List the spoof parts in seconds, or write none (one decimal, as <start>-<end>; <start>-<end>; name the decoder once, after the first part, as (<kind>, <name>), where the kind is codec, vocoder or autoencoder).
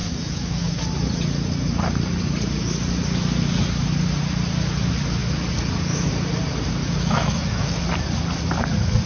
0.0-0.8 (autoencoder, DAC-VAE); 6.8-7.8